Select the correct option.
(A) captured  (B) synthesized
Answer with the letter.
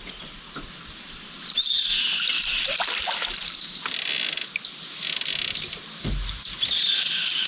A